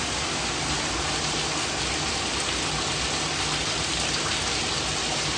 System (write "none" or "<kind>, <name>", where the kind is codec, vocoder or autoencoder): none